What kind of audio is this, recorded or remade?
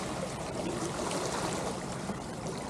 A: recorded